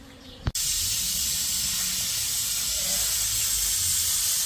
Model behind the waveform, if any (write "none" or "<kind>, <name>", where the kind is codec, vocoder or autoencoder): none